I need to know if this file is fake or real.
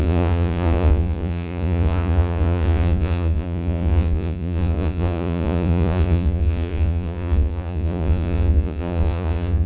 fake